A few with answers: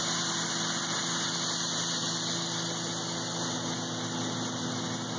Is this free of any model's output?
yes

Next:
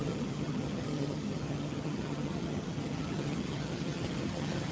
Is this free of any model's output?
no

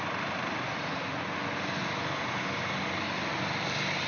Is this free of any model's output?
yes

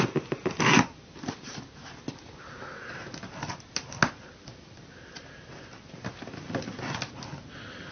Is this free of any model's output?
yes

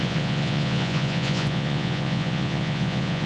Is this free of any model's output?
no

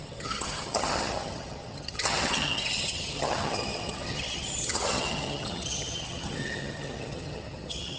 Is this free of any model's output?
no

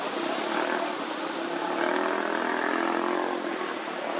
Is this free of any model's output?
yes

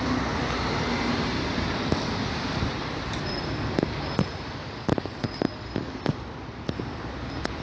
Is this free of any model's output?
yes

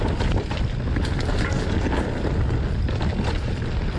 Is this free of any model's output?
yes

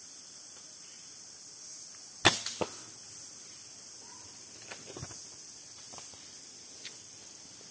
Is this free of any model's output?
yes